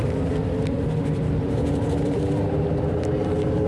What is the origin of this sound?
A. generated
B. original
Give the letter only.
B